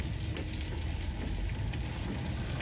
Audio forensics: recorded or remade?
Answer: recorded